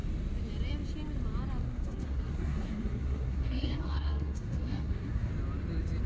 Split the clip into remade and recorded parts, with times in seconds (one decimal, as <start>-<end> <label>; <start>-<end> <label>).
0.0-1.6 recorded; 1.6-5.3 remade; 5.3-6.1 recorded